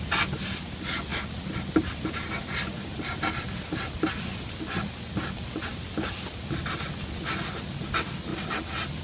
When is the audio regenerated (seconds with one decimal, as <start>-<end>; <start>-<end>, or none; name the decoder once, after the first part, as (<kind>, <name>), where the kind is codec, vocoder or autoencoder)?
none